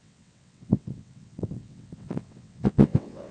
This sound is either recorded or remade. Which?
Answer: remade